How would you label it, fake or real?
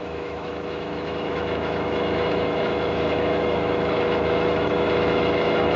fake